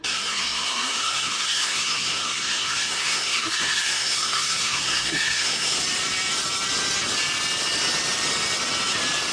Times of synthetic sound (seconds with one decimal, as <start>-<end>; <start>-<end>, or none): 0.0-5.8